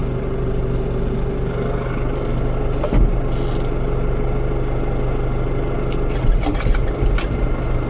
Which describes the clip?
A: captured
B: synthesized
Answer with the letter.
A